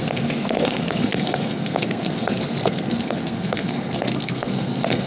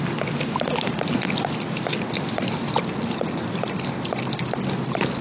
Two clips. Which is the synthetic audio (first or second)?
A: first